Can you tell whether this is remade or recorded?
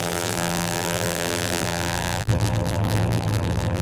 remade